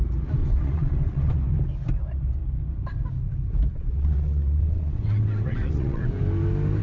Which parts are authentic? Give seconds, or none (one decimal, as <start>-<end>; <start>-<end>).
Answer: 0.0-0.4; 1.4-3.7; 6.1-6.8